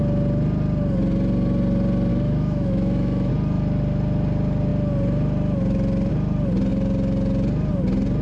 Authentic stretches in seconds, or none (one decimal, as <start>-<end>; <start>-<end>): 0.0-2.1; 3.3-8.2